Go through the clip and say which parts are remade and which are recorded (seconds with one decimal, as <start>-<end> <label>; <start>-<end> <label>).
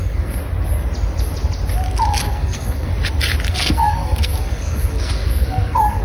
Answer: 0.0-0.4 remade; 0.4-2.2 recorded; 2.2-2.9 remade; 2.9-3.5 recorded; 3.5-6.0 remade